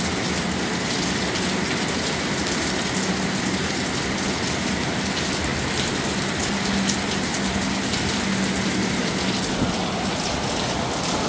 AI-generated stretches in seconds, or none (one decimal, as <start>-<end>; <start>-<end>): none